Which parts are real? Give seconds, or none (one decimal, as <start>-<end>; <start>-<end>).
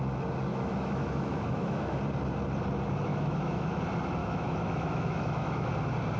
0.0-0.5; 2.0-3.1; 3.8-4.2; 5.7-6.2